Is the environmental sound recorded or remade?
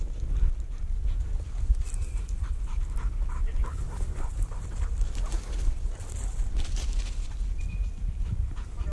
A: recorded